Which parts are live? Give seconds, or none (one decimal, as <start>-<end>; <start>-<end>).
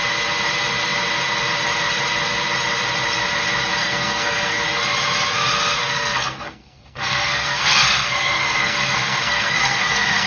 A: 0.0-3.8; 4.6-5.8